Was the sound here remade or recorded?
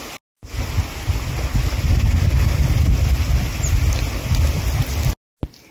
recorded